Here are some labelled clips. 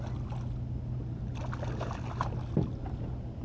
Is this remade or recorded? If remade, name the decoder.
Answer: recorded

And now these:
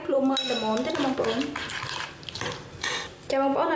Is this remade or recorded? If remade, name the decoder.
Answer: recorded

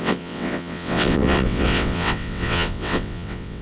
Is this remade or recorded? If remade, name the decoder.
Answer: remade, vocoder, WaveNeXt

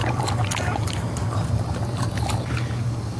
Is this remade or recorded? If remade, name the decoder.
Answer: recorded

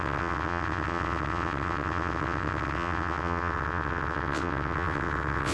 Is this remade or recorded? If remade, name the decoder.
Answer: remade, vocoder, WaveNeXt